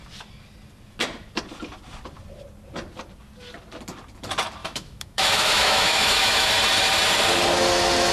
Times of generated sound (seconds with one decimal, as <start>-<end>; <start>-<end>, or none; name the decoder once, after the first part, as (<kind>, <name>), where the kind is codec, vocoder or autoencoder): 4.6-6.5 (autoencoder, DAC-VAE)